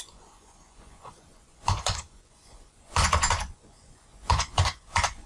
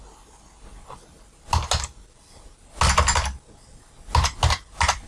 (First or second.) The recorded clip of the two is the second